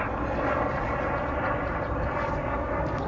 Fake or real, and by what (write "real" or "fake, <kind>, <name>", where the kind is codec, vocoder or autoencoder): real